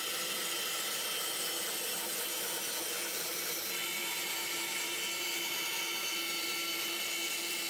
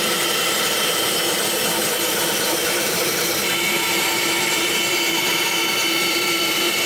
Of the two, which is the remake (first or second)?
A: second